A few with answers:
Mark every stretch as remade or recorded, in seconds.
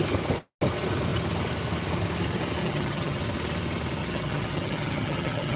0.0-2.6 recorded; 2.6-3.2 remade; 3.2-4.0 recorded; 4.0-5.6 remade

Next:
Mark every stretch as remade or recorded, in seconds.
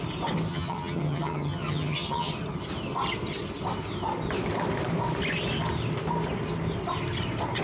0.0-0.5 recorded; 0.5-2.3 remade; 2.3-7.6 recorded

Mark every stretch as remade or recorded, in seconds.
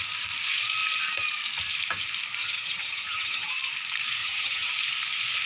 0.0-2.4 recorded; 2.4-3.5 remade; 3.5-4.2 recorded; 4.2-4.7 remade; 4.7-5.5 recorded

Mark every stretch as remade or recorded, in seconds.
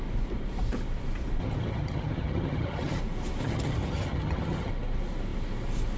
0.0-1.4 recorded; 1.4-3.0 remade; 3.0-3.4 recorded; 3.4-4.7 remade; 4.7-6.0 recorded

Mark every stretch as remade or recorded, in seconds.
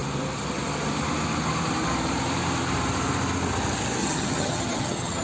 0.0-4.0 recorded; 4.0-5.2 remade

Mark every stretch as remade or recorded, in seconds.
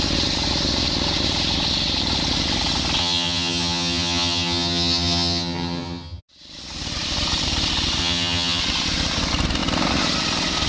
0.0-3.0 recorded; 3.0-6.2 remade; 6.2-8.0 recorded; 8.0-8.6 remade; 8.6-10.7 recorded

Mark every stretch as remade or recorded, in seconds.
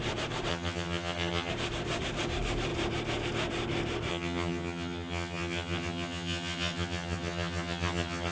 0.0-0.5 recorded; 0.5-1.5 remade; 1.5-4.1 recorded; 4.1-8.3 remade